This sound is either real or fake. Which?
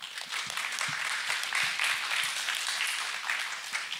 real